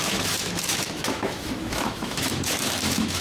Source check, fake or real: fake